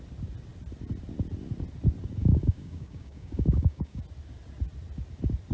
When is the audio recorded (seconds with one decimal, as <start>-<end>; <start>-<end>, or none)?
0.0-2.2; 4.0-5.5